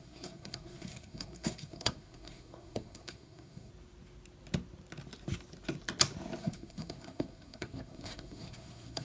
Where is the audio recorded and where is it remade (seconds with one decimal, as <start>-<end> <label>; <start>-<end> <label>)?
0.0-3.7 remade; 3.7-6.4 recorded; 6.4-9.0 remade